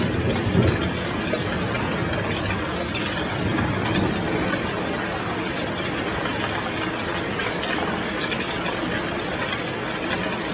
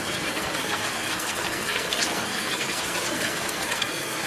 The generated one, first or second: second